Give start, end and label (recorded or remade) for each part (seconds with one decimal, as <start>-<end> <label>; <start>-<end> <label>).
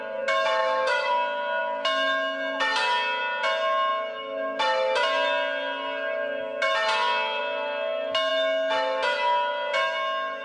0.0-0.6 recorded; 0.6-1.1 remade; 1.1-10.4 recorded